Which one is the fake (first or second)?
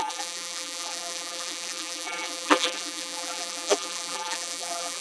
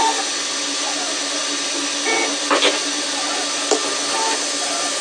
first